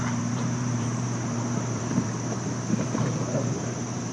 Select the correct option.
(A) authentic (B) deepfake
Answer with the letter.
B